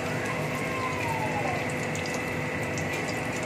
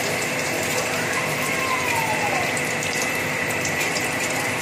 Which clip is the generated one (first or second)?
second